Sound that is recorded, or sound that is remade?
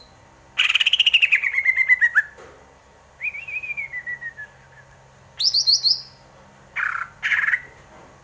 recorded